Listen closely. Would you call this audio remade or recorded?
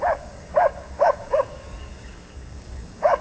remade